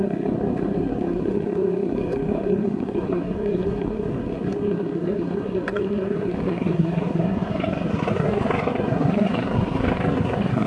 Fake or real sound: fake